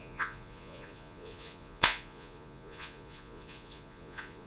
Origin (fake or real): fake